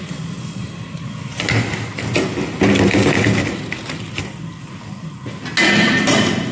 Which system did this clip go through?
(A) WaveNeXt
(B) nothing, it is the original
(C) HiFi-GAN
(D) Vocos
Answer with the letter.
B